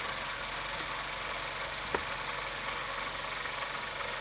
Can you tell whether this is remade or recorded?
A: recorded